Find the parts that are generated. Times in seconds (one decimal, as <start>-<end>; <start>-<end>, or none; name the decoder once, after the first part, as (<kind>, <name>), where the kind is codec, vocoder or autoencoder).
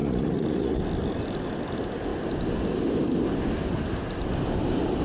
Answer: 0.0-0.8 (vocoder, Vocos)